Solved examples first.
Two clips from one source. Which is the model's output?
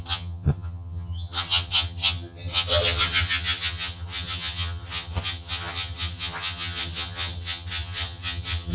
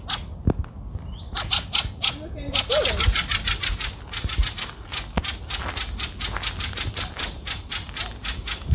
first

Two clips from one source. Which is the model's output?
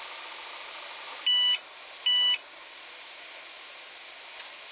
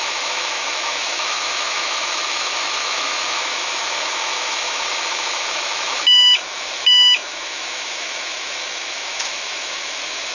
second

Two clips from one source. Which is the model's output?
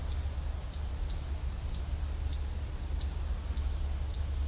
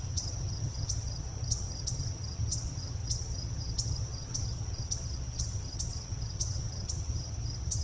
second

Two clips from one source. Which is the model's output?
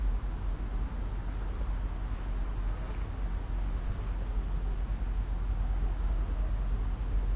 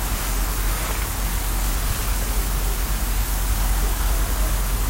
second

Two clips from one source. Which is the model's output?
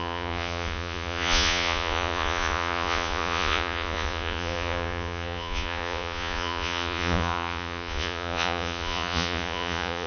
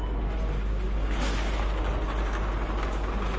first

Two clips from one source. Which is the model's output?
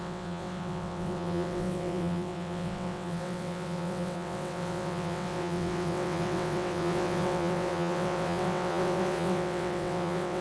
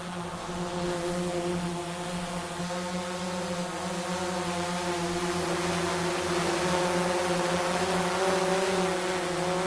first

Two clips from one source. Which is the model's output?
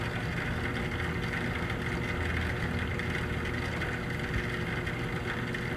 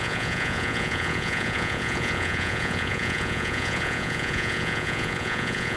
second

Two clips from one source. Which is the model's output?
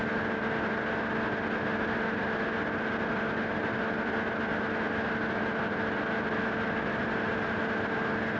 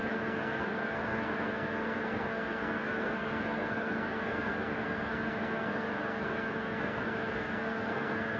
second